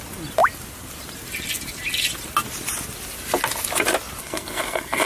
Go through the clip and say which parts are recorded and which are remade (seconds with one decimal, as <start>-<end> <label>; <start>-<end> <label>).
0.0-4.2 recorded; 4.2-5.1 remade